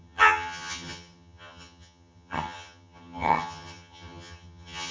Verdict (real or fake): fake